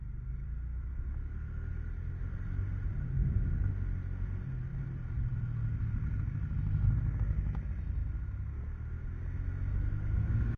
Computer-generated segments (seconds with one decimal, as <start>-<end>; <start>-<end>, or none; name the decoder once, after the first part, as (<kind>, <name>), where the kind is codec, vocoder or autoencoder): 1.7-3.7 (vocoder, BigVGAN v2); 4.7-5.3